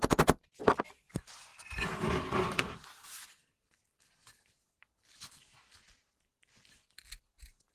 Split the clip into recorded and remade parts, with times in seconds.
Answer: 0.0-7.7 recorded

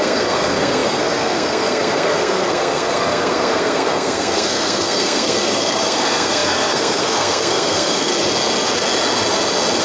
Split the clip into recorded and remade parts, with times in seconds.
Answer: 0.0-8.1 remade; 8.1-9.8 recorded